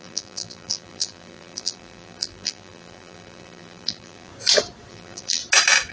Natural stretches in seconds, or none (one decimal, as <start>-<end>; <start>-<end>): 4.3-4.9; 5.4-5.9